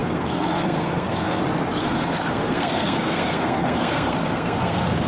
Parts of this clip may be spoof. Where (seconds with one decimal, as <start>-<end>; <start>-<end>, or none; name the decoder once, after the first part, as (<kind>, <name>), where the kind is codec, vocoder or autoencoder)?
0.0-1.4 (codec, SNAC); 1.8-5.1